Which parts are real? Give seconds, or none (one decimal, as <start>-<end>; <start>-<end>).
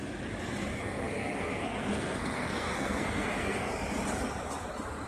0.0-0.7; 3.7-5.1